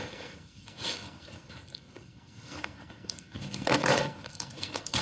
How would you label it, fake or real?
fake